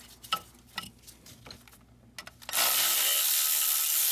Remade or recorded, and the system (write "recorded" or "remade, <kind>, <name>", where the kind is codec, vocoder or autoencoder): recorded